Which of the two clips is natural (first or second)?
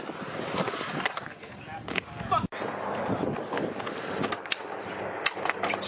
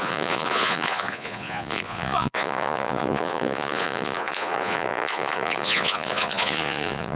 first